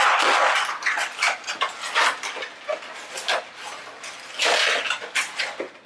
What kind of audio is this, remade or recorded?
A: recorded